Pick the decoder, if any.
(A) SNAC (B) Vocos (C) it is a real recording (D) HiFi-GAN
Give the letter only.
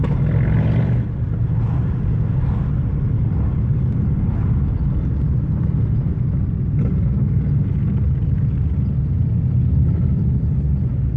C